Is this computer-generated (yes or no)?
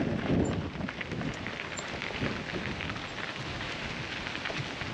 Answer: no